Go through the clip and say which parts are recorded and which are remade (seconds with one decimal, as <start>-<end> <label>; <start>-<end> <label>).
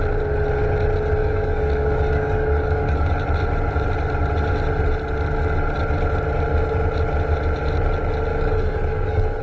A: 0.0-1.2 recorded; 1.2-3.1 remade; 3.1-8.3 recorded; 8.3-9.4 remade